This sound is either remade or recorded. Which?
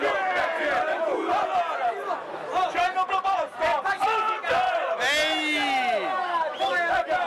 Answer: recorded